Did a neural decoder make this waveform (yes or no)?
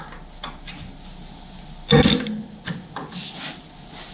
no